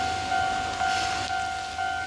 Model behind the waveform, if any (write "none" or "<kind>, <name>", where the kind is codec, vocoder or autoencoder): none